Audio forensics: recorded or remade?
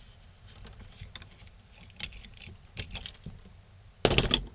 recorded